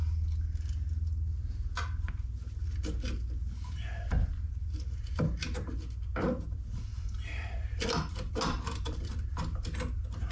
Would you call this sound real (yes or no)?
yes